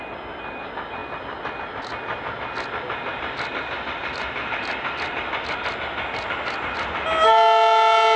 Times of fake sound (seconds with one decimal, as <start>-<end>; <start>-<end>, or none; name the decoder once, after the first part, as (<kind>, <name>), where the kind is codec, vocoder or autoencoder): none